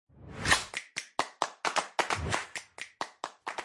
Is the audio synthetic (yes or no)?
no